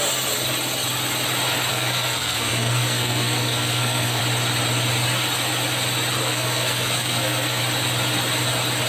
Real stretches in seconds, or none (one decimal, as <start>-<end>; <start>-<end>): 0.0-1.7; 4.2-6.2; 7.6-8.9

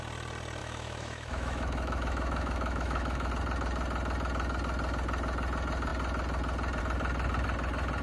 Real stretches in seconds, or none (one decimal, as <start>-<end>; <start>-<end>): 0.0-0.6; 3.3-8.0